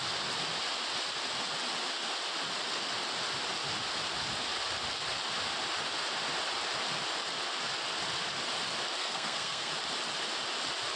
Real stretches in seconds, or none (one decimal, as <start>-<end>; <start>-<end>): 0.0-9.0; 9.7-11.0

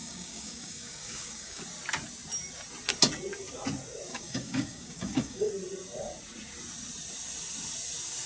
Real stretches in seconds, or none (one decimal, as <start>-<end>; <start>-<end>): 1.6-4.1; 5.5-8.3

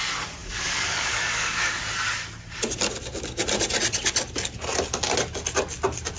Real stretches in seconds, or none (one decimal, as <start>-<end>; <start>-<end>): 0.0-0.4; 1.8-6.2

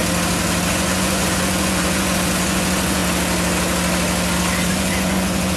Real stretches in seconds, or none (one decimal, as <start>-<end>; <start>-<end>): 0.0-0.7; 3.0-4.7

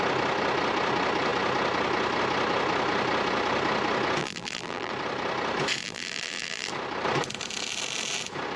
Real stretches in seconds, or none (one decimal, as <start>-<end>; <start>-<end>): 0.0-4.2; 4.9-5.8; 6.7-8.6

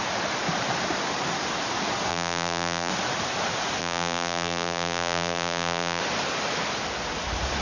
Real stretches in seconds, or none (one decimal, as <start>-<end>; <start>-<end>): 0.0-2.1; 2.9-3.8; 6.0-7.6